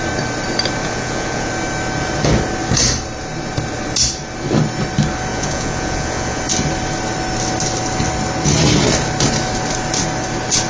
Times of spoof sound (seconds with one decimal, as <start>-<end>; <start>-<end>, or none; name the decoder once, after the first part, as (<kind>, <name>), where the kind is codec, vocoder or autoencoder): 0.8-1.5 (vocoder, Vocos); 5.3-6.4